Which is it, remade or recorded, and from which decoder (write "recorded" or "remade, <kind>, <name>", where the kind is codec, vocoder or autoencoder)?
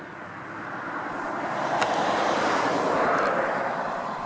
remade, vocoder, BigVGAN v2